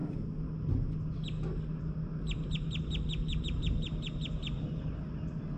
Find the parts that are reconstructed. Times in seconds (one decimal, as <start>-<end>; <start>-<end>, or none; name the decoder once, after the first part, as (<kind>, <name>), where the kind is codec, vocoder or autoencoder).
none